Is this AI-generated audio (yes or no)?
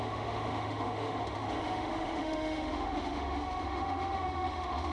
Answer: yes